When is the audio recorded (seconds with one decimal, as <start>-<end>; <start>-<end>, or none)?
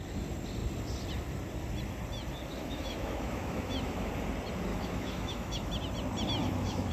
0.0-2.6; 4.1-4.7; 5.7-6.4